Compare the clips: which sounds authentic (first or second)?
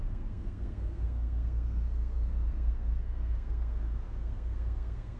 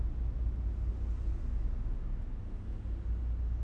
second